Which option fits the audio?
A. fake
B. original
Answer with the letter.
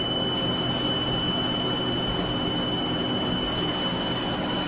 B